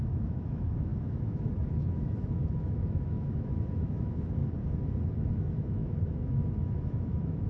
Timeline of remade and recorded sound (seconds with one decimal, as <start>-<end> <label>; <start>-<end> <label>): 0.0-4.4 remade; 4.4-5.1 recorded; 5.1-7.5 remade